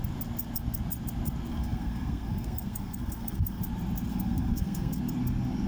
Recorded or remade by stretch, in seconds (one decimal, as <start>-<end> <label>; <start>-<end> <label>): 0.0-1.5 recorded; 1.5-3.6 remade; 3.6-4.1 recorded; 4.1-5.0 remade; 5.0-5.7 recorded